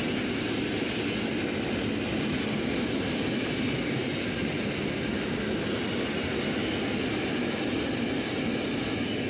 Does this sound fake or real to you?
real